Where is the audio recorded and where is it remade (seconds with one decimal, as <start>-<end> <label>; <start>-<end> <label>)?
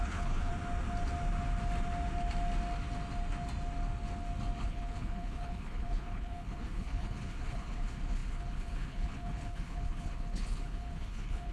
0.0-0.5 remade; 0.5-4.6 recorded; 4.6-11.5 remade